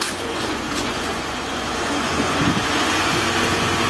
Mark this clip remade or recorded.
remade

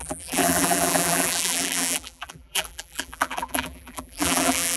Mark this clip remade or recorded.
remade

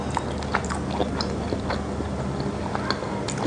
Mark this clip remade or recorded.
recorded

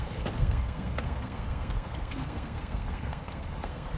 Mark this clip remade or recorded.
remade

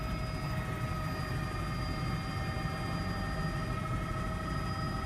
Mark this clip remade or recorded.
recorded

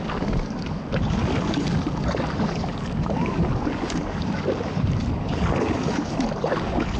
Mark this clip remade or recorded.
remade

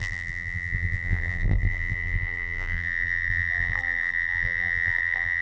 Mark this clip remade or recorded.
remade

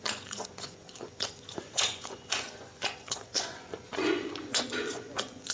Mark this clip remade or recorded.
remade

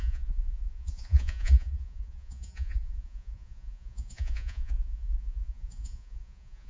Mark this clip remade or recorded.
remade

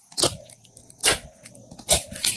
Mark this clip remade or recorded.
recorded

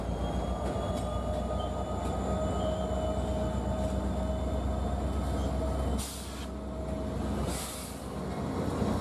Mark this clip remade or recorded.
recorded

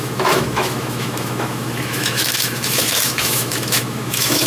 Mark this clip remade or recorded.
remade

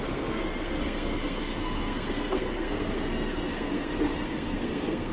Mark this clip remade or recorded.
remade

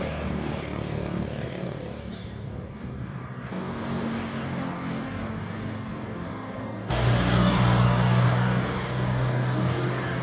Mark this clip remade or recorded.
remade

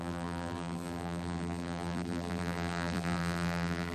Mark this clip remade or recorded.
remade